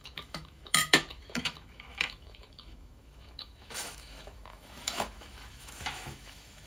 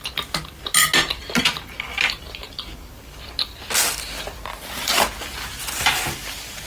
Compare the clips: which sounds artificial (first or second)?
first